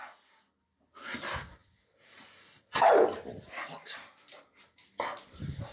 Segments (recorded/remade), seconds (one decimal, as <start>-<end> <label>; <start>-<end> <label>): 0.0-5.7 recorded